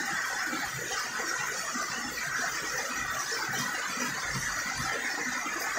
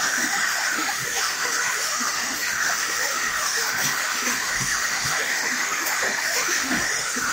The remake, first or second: second